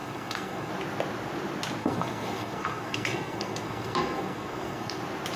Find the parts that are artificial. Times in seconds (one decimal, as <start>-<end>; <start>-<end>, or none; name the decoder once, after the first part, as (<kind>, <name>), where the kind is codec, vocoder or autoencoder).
0.0-0.7 (codec, SNAC); 1.8-5.0

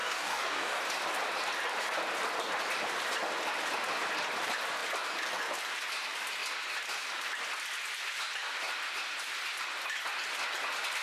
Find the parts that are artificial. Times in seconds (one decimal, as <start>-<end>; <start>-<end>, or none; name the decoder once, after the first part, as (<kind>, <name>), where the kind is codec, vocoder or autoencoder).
0.0-0.8 (codec, DAC)

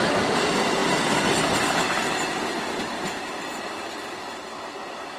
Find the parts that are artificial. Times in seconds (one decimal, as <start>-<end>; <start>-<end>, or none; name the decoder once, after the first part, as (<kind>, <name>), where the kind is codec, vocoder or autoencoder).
none

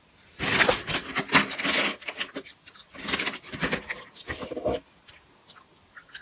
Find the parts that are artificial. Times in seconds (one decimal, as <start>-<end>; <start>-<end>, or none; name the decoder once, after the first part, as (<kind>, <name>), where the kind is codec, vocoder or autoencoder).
none

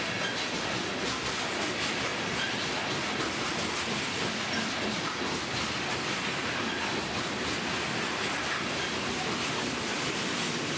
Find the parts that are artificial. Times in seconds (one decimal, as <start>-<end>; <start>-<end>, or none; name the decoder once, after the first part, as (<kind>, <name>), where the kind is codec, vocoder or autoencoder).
none

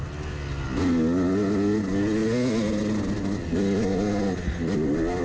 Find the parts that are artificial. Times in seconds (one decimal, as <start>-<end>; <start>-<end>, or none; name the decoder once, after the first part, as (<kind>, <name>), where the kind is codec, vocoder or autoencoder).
none

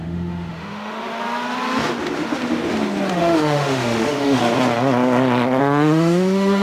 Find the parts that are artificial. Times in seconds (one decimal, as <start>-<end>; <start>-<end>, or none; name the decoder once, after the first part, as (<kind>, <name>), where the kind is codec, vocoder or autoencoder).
0.0-1.0 (autoencoder, DAC-VAE); 3.1-4.4; 5.6-6.6

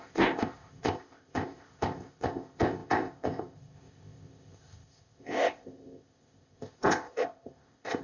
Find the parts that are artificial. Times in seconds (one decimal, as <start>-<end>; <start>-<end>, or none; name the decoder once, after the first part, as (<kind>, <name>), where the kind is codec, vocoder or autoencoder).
0.0-8.0 (codec, ZipCodec)